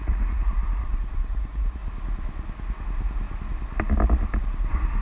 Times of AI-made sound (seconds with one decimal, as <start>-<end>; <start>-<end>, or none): 0.0-1.8